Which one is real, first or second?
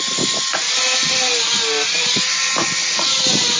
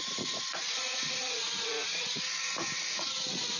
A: first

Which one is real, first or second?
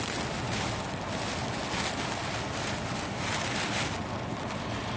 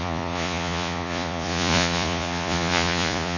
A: first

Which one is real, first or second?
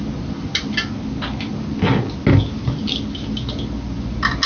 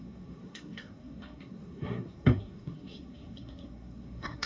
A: first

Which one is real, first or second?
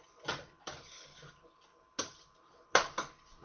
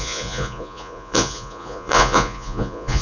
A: first